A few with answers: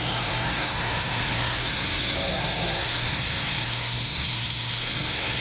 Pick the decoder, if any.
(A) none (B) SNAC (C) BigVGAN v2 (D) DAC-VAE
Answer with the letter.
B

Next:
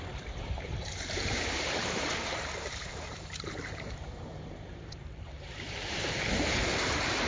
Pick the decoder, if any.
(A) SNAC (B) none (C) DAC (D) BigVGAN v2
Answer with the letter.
D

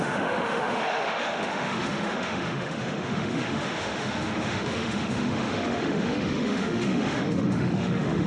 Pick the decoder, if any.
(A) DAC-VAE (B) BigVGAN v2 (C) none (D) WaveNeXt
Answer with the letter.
A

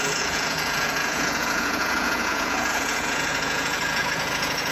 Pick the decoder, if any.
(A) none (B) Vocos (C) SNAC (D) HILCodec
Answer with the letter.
B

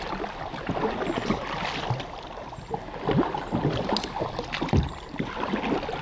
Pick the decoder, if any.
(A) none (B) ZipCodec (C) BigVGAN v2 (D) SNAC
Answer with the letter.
A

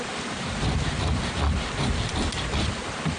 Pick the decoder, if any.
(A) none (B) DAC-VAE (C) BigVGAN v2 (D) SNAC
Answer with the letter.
C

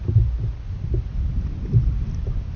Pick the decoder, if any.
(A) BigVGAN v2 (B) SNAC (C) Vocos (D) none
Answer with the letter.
D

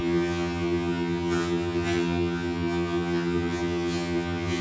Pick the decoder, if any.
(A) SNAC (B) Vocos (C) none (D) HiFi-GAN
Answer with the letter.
D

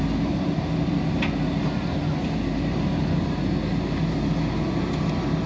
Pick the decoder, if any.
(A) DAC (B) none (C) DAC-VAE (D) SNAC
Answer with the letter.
B